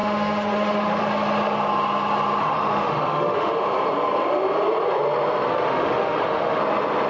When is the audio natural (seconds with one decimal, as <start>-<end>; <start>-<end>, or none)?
1.0-2.4; 3.5-5.5; 6.6-7.1

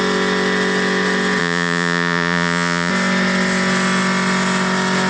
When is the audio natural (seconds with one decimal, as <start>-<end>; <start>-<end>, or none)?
0.0-1.4; 2.9-5.1

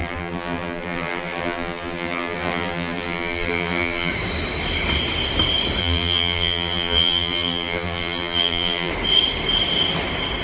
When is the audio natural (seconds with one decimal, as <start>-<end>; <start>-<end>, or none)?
4.1-5.8; 8.9-10.4

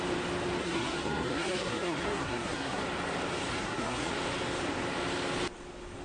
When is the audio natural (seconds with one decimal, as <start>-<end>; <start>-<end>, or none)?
0.0-0.6; 2.8-3.5; 4.1-6.0

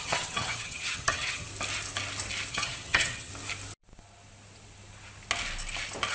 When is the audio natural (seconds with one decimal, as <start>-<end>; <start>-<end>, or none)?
1.5-2.5; 3.3-6.1

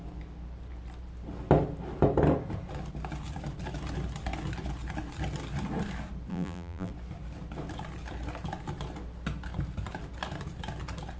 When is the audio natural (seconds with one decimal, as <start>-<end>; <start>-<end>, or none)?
0.0-6.3; 6.9-11.2